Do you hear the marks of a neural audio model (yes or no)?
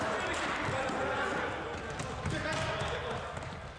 no